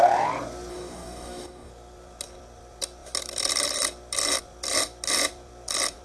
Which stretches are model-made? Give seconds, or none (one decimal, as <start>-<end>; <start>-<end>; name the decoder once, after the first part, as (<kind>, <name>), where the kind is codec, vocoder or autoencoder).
0.7-1.7 (codec, DAC)